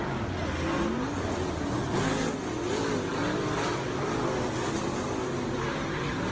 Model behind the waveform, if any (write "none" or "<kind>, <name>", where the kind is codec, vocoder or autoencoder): none